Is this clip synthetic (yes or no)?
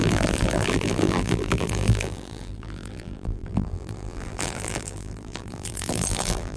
yes